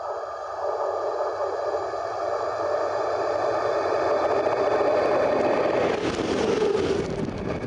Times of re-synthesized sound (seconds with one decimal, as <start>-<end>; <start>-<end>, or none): none